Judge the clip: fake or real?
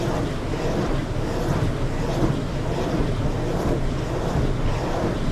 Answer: real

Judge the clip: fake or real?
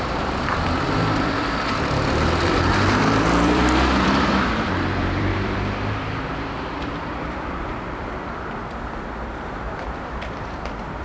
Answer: fake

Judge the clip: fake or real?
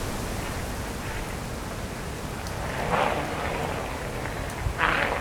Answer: real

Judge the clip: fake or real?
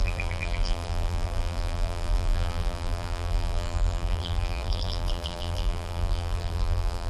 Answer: fake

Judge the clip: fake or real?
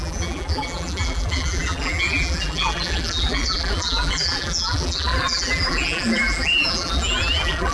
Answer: fake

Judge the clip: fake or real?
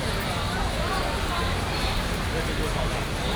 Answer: real